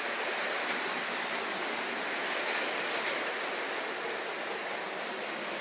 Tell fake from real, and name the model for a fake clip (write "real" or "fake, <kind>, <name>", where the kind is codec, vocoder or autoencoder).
real